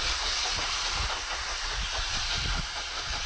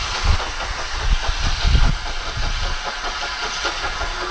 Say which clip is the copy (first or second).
first